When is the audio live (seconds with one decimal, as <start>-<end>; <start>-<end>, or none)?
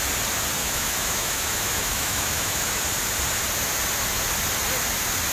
0.0-0.6; 2.8-5.3